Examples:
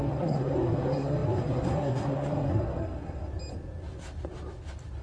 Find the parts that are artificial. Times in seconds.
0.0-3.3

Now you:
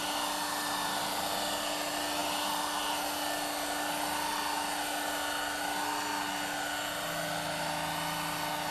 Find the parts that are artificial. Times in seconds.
none